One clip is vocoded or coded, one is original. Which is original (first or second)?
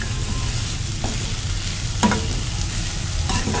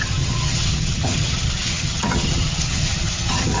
first